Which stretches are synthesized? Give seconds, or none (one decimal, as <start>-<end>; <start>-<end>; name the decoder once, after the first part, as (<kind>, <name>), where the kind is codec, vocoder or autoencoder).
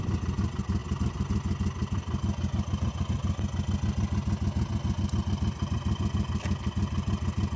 none